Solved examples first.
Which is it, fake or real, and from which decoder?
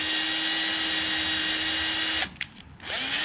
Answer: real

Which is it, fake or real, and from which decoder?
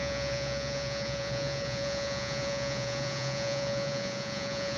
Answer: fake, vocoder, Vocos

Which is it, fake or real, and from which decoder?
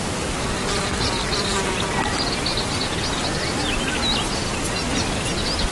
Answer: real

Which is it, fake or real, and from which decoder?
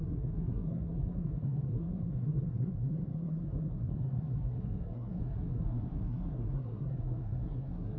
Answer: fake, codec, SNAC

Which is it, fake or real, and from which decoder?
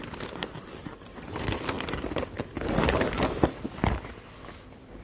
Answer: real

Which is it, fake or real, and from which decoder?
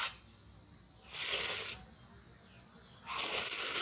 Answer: real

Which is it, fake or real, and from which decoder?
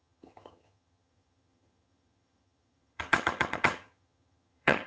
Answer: fake, vocoder, HiFi-GAN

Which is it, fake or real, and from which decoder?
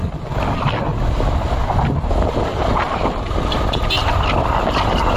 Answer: real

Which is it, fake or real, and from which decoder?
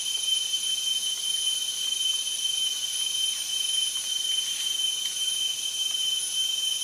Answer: fake, vocoder, BigVGAN v2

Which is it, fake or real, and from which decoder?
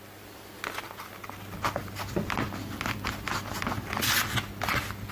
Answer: real